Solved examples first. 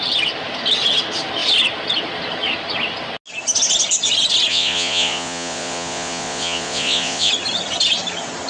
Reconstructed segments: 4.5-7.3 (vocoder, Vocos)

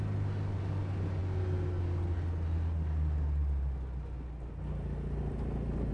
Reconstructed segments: none

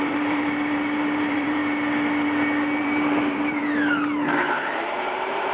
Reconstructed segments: 0.0-1.6 (vocoder, BigVGAN v2); 2.8-3.6; 5.0-5.5

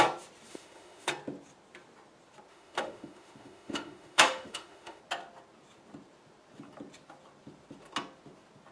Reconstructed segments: 0.5-1.1 (autoencoder, DAC-VAE); 2.5-5.0

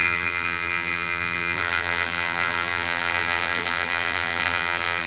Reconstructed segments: 0.0-5.1 (vocoder, BigVGAN v2)

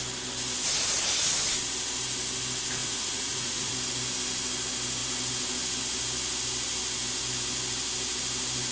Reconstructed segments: 2.8-3.7 (vocoder, Vocos)

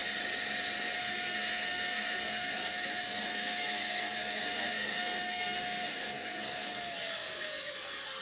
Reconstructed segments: 1.0-8.2 (codec, SNAC)